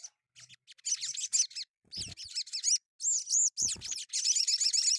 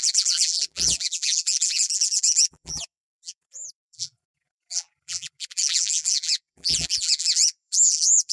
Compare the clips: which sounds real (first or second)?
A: first